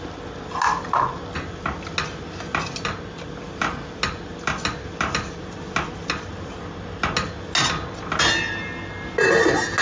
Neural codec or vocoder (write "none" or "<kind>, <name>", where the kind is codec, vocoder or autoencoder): none